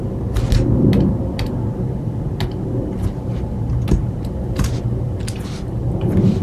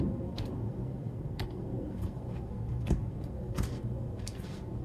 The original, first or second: first